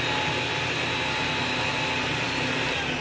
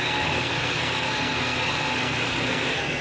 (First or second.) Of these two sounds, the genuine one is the first